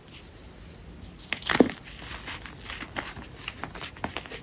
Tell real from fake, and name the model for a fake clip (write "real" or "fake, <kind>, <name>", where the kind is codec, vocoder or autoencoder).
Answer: real